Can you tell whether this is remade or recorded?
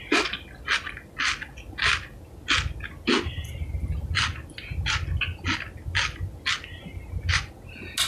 recorded